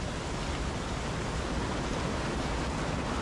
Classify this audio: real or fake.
real